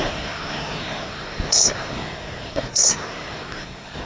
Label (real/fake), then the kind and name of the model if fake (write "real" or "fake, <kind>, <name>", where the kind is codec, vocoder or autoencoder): fake, codec, SNAC